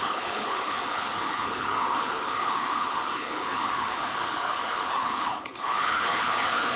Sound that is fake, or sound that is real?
fake